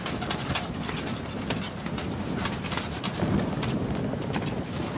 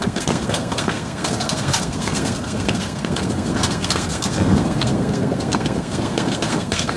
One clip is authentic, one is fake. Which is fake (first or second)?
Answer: second